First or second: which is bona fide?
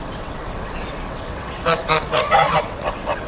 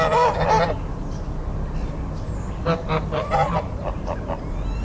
second